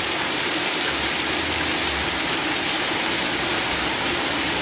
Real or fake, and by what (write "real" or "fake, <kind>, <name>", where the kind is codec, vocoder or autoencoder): real